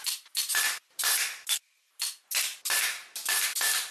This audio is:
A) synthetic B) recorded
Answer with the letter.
B